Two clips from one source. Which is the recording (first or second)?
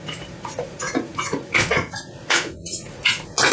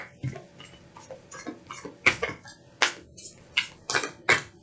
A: second